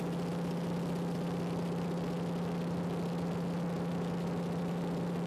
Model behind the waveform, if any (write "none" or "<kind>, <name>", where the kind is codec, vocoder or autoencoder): none